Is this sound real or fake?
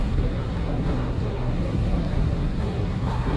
fake